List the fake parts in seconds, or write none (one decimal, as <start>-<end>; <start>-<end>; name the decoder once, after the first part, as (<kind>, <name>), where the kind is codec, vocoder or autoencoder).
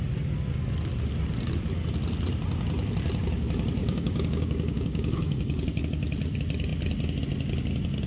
3.8-5.8 (codec, DAC)